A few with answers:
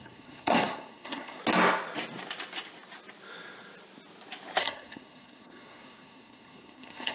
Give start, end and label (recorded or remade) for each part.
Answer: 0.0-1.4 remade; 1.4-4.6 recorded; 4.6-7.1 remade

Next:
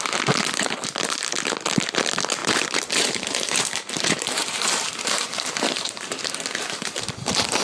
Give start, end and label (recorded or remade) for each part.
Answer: 0.0-2.4 recorded; 2.4-7.0 remade; 7.0-7.6 recorded

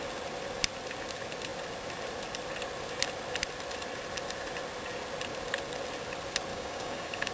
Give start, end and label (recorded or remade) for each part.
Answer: 0.0-6.5 recorded; 6.5-7.3 remade

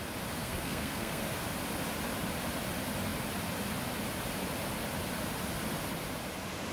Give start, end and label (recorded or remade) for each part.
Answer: 0.0-0.4 recorded; 0.4-1.2 remade; 1.2-6.7 recorded